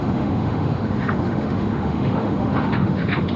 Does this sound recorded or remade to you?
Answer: remade